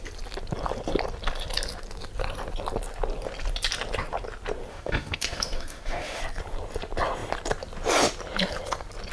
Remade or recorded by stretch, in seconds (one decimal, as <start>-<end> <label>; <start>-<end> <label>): 0.0-4.7 recorded; 4.7-6.2 remade; 6.2-9.1 recorded

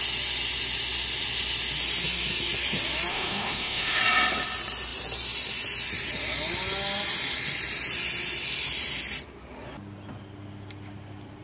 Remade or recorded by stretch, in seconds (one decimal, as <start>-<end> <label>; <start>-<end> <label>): 0.0-3.1 recorded; 3.1-4.0 remade; 4.0-11.4 recorded

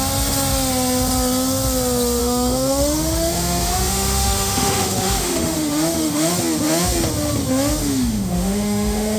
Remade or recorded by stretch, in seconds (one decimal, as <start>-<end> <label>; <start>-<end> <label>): 0.0-2.2 recorded; 2.2-6.3 remade; 6.3-7.8 recorded; 7.8-9.2 remade